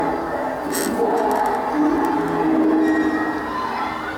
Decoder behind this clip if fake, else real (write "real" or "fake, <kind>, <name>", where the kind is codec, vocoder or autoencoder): real